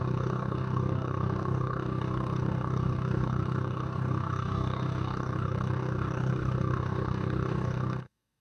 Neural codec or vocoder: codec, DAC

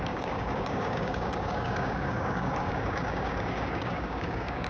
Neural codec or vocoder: codec, DAC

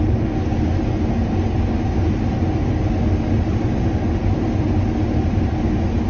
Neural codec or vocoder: none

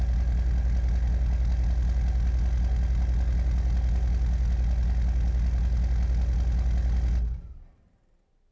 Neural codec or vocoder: none